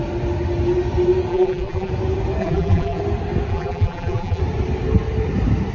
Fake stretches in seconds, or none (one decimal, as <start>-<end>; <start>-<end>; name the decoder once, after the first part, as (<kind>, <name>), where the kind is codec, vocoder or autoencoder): 1.3-1.9 (vocoder, BigVGAN v2); 2.4-3.0; 3.5-4.4

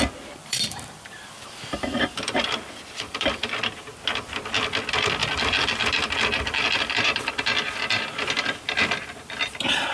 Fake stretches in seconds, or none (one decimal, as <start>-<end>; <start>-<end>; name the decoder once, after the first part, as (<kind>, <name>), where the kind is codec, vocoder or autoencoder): 0.4-3.5 (vocoder, BigVGAN v2); 5.2-7.3

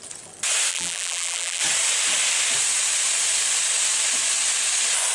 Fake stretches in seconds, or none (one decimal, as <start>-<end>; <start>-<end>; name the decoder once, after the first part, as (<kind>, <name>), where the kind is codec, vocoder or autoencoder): 0.7-1.6 (vocoder, BigVGAN v2)

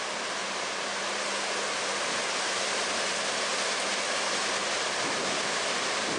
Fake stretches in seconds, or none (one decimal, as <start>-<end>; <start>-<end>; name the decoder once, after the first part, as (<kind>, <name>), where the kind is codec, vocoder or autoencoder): 0.4-1.3 (vocoder, BigVGAN v2)

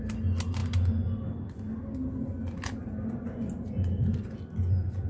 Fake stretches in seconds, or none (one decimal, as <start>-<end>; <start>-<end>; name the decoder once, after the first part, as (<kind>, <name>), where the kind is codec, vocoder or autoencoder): none

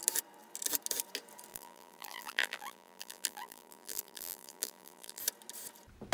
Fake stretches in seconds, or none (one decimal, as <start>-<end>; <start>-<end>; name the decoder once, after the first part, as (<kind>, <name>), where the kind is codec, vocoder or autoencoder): 1.5-5.2 (vocoder, BigVGAN v2)

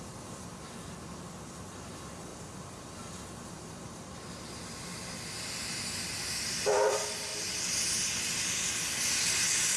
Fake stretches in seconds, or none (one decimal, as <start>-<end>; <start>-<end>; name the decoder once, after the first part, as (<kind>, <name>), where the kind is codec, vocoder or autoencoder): none